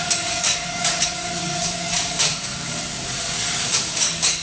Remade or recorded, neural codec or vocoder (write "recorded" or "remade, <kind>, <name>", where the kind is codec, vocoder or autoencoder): remade, codec, DAC